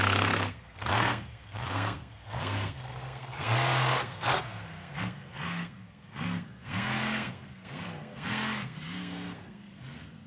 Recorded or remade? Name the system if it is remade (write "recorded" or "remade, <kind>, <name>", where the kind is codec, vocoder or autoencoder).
remade, codec, SNAC